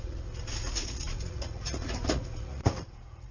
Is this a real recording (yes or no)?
no